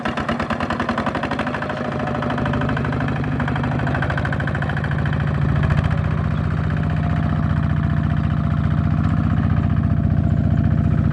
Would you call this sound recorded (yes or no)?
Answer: yes